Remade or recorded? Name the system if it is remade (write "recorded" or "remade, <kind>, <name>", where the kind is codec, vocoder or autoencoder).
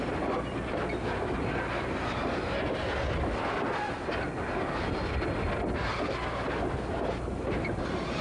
recorded